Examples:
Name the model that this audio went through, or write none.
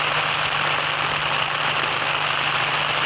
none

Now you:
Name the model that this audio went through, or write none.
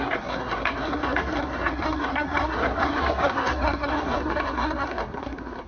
codec, SNAC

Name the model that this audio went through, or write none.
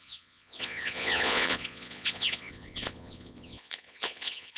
vocoder, Vocos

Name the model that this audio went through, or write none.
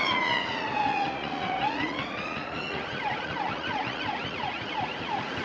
vocoder, Vocos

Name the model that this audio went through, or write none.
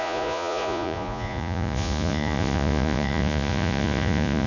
vocoder, Vocos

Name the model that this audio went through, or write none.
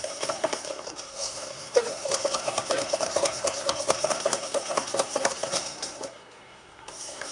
codec, SNAC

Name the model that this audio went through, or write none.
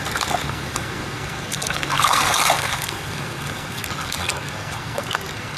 codec, SNAC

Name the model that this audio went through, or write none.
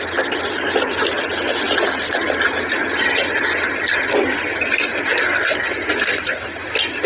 none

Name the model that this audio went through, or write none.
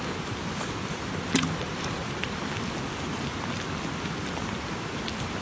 none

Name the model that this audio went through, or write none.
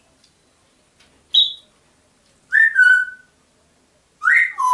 none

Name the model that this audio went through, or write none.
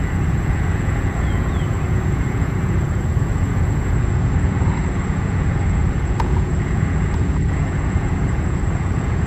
vocoder, Vocos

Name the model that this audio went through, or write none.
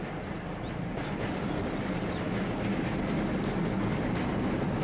none